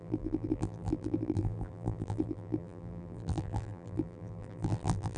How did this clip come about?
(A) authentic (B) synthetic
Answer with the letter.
B